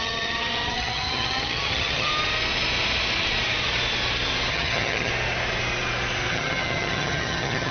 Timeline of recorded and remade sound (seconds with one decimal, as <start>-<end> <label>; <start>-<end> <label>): 0.0-2.1 remade; 2.1-4.5 recorded; 4.5-5.1 remade; 5.1-6.3 recorded; 6.3-7.7 remade